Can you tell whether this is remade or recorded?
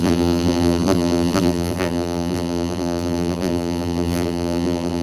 remade